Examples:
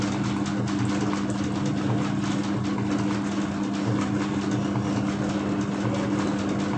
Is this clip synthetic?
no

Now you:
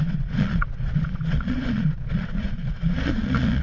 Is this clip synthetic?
yes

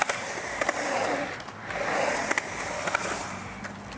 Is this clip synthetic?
no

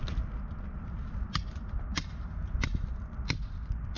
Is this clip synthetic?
no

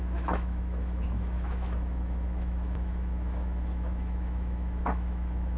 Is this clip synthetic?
yes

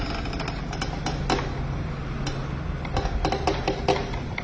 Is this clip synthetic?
no